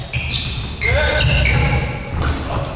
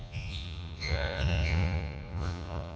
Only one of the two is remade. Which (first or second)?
second